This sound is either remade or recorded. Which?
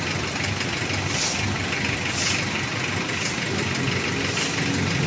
recorded